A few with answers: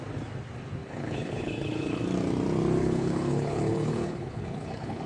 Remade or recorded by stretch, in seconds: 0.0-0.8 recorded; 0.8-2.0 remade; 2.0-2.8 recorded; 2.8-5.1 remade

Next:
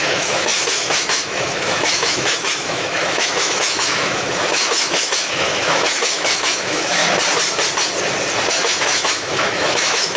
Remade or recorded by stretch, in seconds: 0.0-7.0 remade; 7.0-8.5 recorded; 8.5-10.2 remade

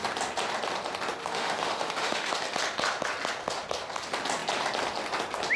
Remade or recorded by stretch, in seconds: 0.0-1.2 recorded; 1.2-2.3 remade; 2.3-5.6 recorded

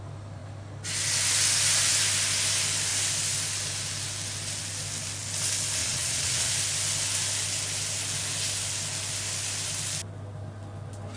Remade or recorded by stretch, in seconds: 0.0-5.8 recorded; 5.8-6.5 remade; 6.5-11.2 recorded

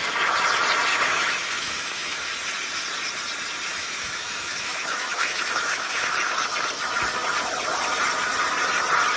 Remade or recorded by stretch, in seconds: 0.0-0.9 recorded; 0.9-2.3 remade; 2.3-3.7 recorded; 3.7-6.1 remade; 6.1-9.2 recorded

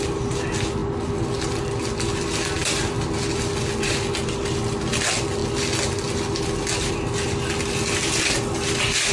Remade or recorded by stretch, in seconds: 0.0-9.1 recorded